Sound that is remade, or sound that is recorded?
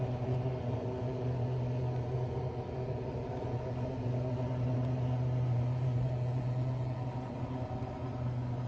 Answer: recorded